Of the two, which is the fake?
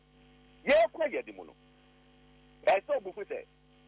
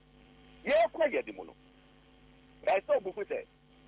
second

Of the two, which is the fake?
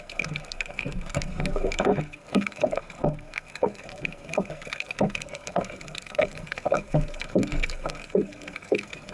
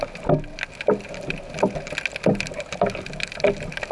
first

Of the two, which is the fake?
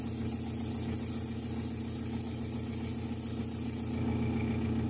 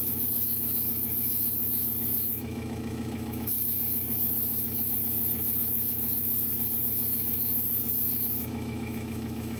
second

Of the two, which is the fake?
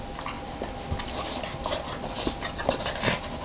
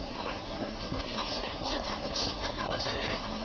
second